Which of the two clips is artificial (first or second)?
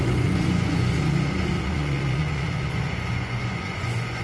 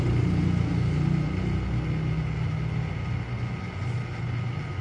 first